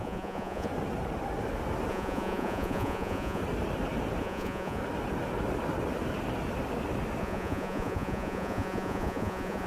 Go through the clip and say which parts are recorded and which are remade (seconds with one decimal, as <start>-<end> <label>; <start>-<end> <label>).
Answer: 0.0-0.7 remade; 0.7-1.9 recorded; 1.9-3.4 remade; 3.4-4.2 recorded; 4.2-4.8 remade; 4.8-7.2 recorded; 7.2-9.7 remade